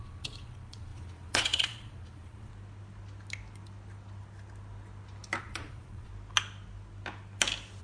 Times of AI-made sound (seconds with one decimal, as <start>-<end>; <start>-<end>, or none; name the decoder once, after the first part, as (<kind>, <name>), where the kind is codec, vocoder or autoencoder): 0.0-2.5 (vocoder, Vocos); 5.4-6.1

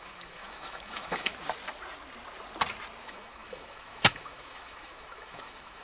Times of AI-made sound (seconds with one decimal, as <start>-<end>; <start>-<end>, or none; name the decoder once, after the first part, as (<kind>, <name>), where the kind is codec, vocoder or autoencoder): 0.0-1.3 (autoencoder, DAC-VAE); 3.0-5.8